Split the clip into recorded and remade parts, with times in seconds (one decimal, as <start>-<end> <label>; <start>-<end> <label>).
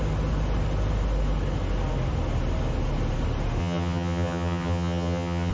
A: 0.0-3.6 recorded; 3.6-5.5 remade